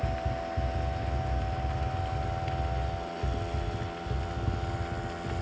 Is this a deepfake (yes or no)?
no